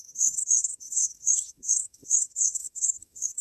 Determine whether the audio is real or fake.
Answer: fake